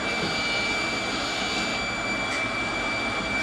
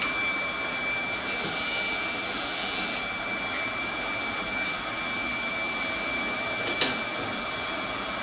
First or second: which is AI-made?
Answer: second